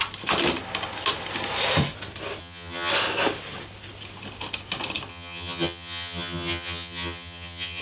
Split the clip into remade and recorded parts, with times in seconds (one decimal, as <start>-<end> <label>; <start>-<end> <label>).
0.0-2.4 recorded; 2.4-2.9 remade; 2.9-5.1 recorded; 5.1-7.8 remade